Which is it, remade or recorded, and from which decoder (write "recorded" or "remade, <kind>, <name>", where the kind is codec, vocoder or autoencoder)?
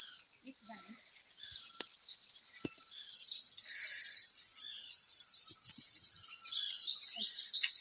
recorded